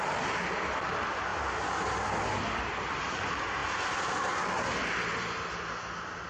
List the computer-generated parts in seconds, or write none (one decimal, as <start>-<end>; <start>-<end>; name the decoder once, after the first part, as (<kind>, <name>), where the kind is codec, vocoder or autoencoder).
none